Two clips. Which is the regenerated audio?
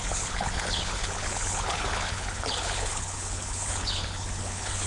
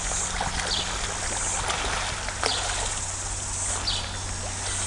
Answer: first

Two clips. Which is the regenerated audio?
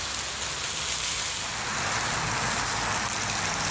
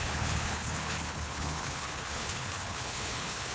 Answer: second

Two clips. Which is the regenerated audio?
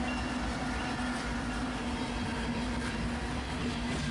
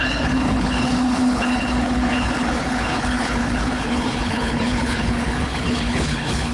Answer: second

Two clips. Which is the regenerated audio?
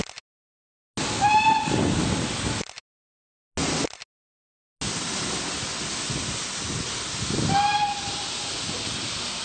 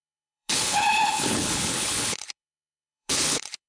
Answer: second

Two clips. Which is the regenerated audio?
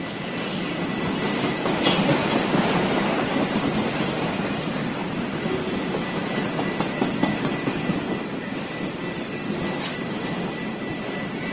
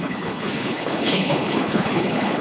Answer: second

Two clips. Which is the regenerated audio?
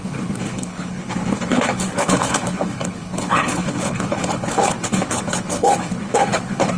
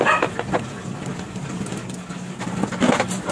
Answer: first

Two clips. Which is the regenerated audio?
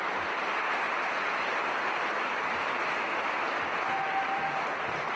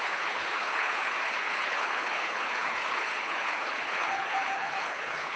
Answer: second